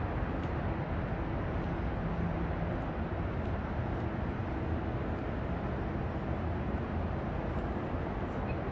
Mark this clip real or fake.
real